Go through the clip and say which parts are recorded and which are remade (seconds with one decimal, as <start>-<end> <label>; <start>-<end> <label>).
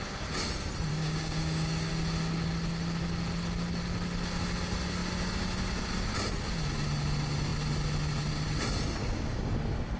0.0-0.9 recorded; 0.9-1.9 remade; 1.9-9.0 recorded; 9.0-9.6 remade; 9.6-10.0 recorded